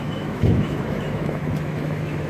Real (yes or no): no